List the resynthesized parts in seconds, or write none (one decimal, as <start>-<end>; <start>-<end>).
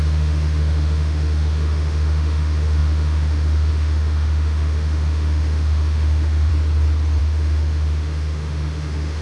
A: 0.0-6.5; 7.2-9.2